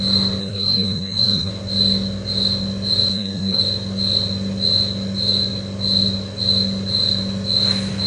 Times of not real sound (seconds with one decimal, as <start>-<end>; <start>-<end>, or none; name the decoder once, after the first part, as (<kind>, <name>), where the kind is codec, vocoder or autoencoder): 0.4-1.5 (codec, SNAC); 3.1-3.6